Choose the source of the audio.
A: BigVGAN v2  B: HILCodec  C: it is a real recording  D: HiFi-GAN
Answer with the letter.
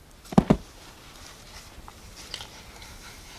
C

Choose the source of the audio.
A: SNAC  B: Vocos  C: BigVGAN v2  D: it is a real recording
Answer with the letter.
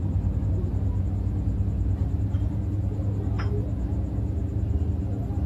D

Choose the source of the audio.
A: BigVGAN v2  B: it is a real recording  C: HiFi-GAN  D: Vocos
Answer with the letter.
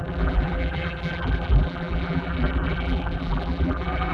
A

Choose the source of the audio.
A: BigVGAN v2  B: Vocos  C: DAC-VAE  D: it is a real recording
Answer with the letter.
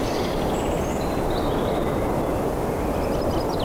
D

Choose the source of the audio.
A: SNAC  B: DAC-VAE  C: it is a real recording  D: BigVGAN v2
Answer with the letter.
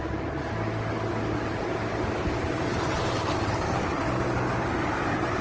C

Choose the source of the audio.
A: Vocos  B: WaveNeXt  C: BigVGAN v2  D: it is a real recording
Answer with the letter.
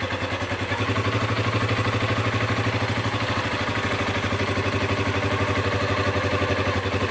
D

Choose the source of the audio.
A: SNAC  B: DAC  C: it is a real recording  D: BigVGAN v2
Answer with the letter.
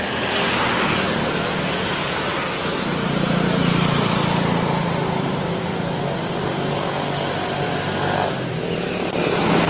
C